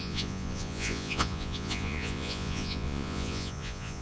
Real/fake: fake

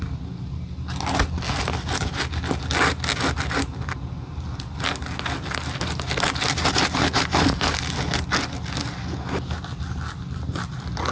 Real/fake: real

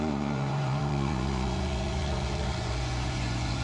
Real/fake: fake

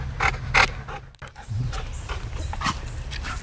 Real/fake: real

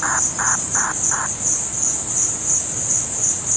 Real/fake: real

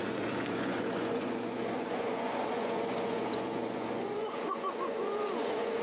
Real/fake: fake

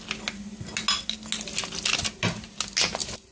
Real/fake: real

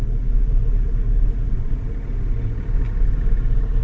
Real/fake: real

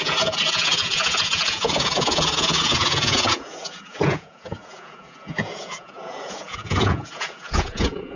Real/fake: fake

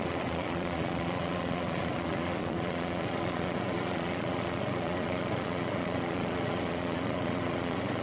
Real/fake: fake